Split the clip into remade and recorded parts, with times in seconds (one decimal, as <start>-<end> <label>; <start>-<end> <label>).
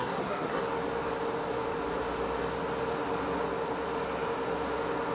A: 0.0-0.6 remade; 0.6-5.1 recorded